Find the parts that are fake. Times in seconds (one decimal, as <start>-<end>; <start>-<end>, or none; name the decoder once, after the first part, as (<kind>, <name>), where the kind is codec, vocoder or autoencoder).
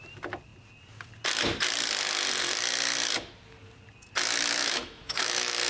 4.6-5.7 (autoencoder, DAC-VAE)